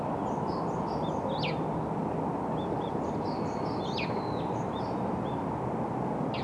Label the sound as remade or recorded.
recorded